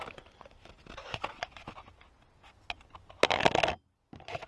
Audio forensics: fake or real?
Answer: real